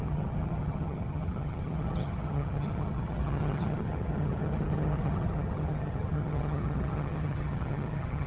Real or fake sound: fake